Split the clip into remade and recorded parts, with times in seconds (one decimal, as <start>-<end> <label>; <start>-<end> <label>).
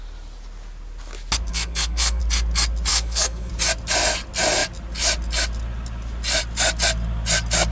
0.0-1.5 recorded; 1.5-2.2 remade; 2.2-2.9 recorded; 2.9-3.5 remade; 3.5-7.7 recorded